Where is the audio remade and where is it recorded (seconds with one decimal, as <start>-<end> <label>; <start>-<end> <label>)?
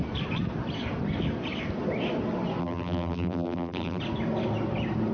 0.0-2.6 recorded; 2.6-4.0 remade; 4.0-5.1 recorded